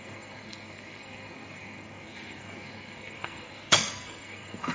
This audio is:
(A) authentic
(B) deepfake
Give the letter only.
B